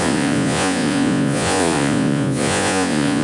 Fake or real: fake